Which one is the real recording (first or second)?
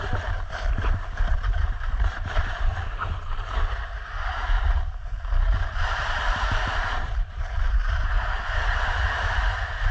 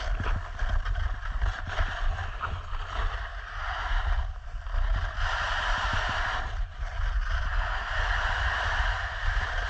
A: second